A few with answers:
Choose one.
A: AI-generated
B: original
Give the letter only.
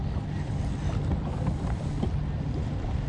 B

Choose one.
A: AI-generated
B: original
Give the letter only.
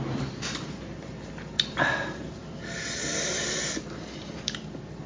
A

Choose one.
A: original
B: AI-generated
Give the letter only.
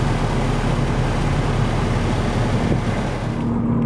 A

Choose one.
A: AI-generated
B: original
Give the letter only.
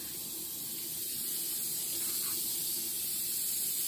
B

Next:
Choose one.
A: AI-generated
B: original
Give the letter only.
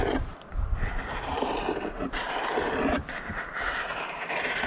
A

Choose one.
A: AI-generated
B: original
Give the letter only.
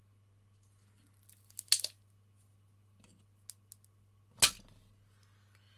B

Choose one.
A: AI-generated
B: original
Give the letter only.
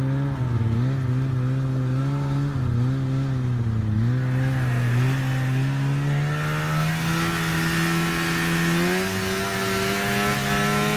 B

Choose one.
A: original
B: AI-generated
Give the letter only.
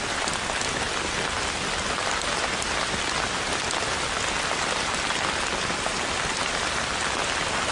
A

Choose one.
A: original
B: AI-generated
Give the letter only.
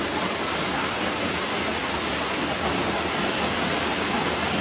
A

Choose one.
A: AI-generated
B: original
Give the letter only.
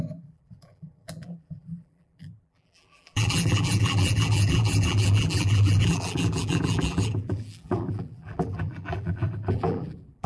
A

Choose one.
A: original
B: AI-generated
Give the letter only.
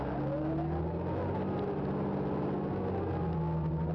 A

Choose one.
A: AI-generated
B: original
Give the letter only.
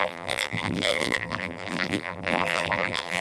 A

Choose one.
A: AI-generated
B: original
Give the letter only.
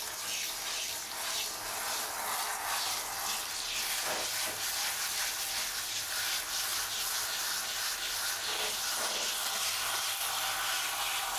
B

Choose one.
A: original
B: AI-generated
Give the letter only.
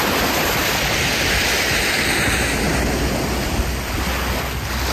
A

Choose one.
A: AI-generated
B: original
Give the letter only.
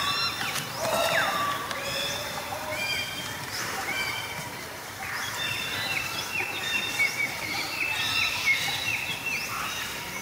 A